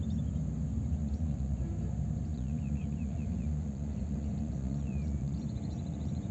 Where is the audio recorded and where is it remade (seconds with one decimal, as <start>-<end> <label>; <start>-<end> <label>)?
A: 0.0-1.0 recorded; 1.0-1.6 remade; 1.6-2.3 recorded; 2.3-6.3 remade